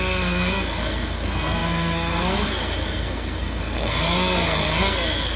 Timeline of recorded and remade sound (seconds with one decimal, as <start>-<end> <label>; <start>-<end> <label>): 0.0-5.4 remade